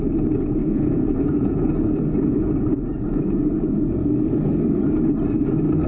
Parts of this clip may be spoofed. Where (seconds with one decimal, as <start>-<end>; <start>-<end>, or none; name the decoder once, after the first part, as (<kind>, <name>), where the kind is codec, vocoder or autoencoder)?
0.6-4.1 (vocoder, Vocos)